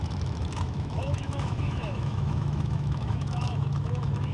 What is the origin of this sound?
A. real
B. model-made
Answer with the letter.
B